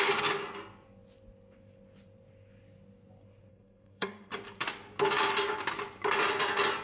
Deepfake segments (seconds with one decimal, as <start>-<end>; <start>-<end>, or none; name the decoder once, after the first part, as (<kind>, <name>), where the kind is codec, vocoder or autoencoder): 3.5-4.3 (codec, SNAC)